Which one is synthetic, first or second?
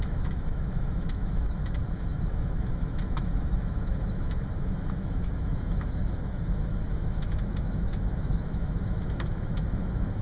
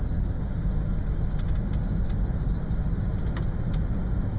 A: first